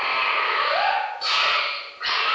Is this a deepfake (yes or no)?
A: no